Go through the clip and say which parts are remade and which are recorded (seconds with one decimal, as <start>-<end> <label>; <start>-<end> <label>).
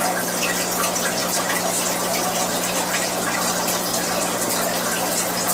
0.0-5.5 recorded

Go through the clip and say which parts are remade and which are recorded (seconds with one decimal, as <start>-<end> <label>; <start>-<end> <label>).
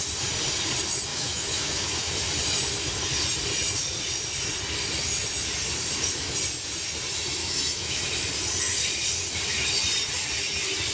0.0-1.1 recorded; 1.1-2.1 remade; 2.1-7.4 recorded; 7.4-8.0 remade; 8.0-10.9 recorded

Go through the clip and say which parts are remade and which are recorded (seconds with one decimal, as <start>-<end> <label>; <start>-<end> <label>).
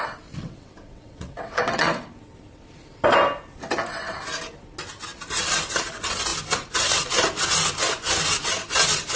0.0-0.4 recorded; 0.4-2.0 remade; 2.0-9.2 recorded